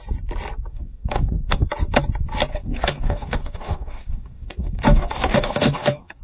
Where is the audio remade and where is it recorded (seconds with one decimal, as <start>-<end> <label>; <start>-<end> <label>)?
0.0-0.7 recorded; 0.7-1.6 remade; 1.6-2.5 recorded; 2.5-6.2 remade